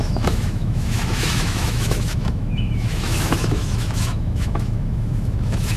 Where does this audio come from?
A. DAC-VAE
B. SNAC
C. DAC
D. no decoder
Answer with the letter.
A